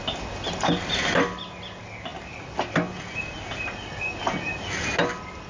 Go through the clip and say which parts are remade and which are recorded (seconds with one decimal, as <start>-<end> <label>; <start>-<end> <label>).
0.0-5.5 recorded

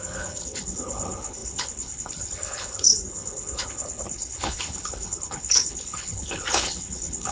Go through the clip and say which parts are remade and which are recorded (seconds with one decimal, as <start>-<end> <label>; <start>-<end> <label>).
0.0-7.3 remade

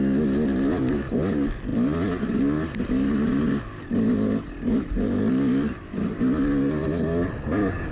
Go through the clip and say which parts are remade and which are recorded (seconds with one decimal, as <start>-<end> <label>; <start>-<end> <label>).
0.0-7.9 recorded

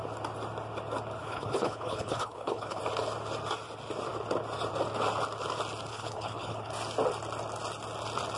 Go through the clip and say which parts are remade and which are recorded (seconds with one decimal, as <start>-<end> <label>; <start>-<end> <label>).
0.0-1.2 recorded; 1.2-2.8 remade; 2.8-5.9 recorded; 5.9-6.7 remade; 6.7-8.4 recorded

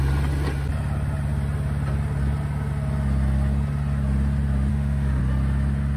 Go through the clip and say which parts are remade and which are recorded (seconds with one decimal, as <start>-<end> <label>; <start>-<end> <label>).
0.0-4.7 recorded; 4.7-5.2 remade; 5.2-6.0 recorded

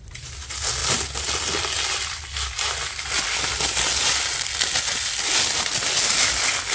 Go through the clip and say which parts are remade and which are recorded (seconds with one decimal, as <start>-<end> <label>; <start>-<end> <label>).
0.0-0.8 remade; 0.8-4.8 recorded; 4.8-5.7 remade; 5.7-6.2 recorded; 6.2-6.7 remade